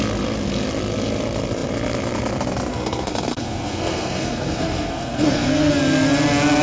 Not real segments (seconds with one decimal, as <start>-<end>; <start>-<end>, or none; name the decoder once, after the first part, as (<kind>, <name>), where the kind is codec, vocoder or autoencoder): 2.7-5.7 (codec, SNAC)